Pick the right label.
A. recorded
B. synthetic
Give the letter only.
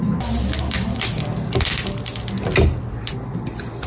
A